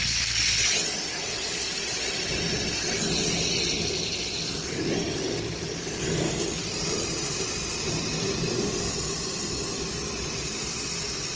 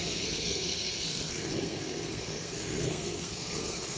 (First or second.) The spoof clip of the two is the second